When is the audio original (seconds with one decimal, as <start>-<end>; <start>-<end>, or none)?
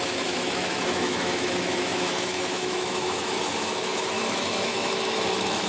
none